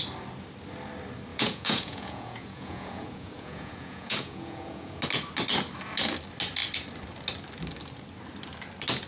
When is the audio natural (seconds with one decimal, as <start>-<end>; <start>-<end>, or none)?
0.0-1.3; 5.0-9.1